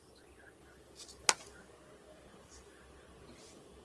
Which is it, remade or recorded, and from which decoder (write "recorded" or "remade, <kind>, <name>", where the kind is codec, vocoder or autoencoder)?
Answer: recorded